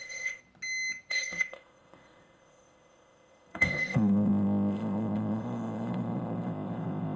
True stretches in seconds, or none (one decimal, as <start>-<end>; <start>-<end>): 0.4-1.1